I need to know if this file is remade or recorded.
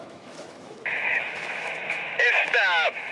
remade